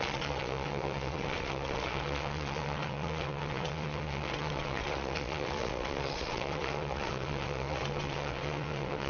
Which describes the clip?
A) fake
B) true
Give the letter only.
A